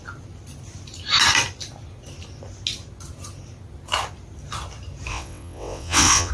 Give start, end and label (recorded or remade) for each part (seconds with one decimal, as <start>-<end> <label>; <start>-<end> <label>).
0.0-5.1 recorded; 5.1-6.3 remade